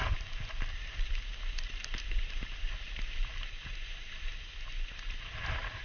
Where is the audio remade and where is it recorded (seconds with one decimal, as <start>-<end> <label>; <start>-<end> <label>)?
0.0-3.5 remade; 3.5-5.8 recorded